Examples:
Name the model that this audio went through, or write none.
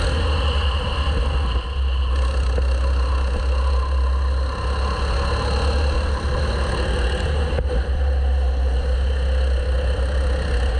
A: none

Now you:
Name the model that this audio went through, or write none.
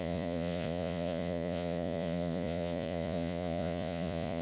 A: vocoder, Vocos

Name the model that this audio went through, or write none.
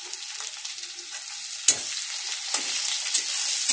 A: none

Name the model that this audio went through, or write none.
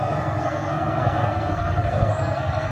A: codec, SNAC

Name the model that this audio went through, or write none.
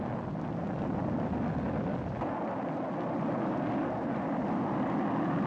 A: none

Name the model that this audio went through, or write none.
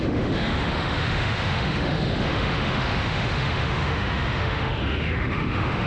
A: autoencoder, DAC-VAE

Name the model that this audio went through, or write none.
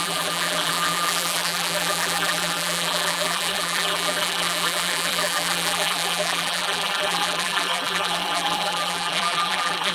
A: vocoder, BigVGAN v2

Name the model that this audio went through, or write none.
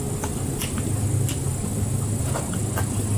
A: none